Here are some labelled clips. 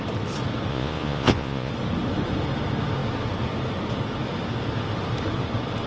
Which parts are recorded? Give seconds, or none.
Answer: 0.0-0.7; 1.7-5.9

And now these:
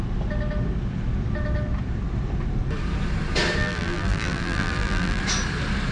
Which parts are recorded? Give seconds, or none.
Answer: 0.0-3.6; 5.2-5.9